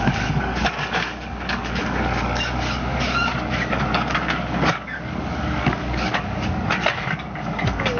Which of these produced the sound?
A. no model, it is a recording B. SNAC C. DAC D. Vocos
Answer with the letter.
C